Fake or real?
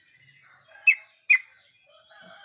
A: real